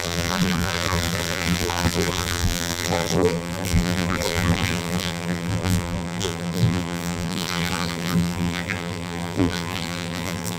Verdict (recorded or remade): remade